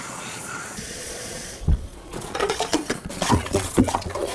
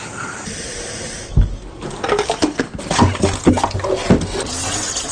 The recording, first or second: second